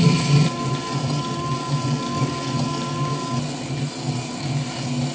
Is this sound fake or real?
real